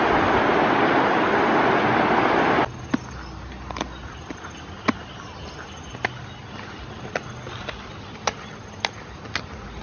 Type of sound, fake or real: real